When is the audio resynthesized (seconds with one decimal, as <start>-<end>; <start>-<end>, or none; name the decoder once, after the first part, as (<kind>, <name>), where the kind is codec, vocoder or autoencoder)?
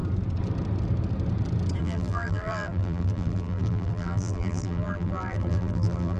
1.8-6.2 (vocoder, BigVGAN v2)